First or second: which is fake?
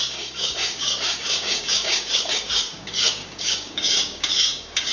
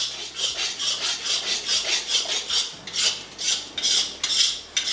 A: first